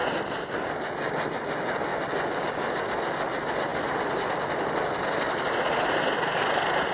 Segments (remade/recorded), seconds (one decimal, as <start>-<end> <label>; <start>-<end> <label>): 0.0-6.9 recorded